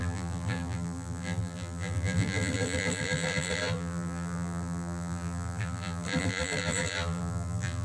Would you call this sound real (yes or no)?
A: no